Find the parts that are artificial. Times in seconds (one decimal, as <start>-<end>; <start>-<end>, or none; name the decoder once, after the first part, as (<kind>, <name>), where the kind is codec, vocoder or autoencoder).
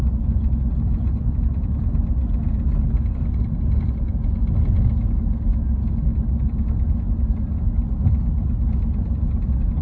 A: none